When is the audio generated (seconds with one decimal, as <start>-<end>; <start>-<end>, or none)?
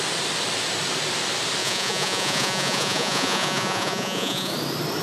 1.6-4.5